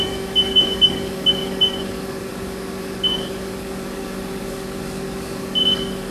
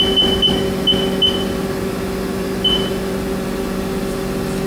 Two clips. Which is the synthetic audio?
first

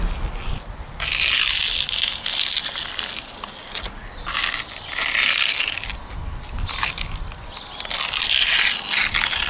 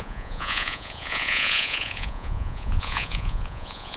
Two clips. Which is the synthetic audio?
second